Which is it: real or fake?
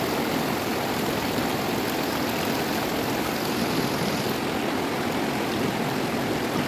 real